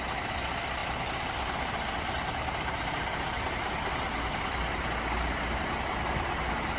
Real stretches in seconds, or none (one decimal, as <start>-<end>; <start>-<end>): 0.0-6.8